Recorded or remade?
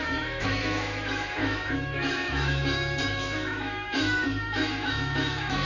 remade